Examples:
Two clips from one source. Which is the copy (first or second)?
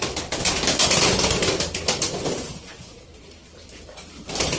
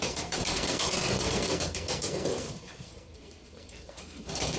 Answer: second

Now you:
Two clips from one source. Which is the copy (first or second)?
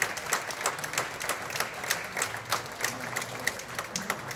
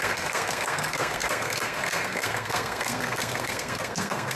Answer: second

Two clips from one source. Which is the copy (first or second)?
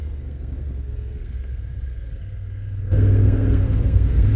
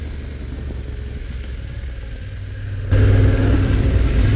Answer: first